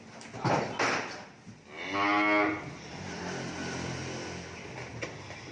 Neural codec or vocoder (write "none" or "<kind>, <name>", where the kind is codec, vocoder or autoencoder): none